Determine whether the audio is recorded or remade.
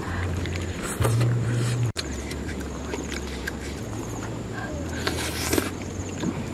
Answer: remade